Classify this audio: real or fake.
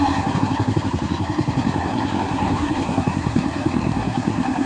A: fake